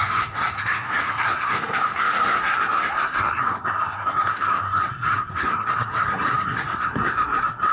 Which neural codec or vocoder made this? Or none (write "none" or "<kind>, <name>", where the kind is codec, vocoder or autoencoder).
codec, SNAC